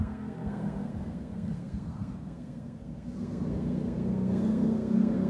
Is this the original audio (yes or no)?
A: no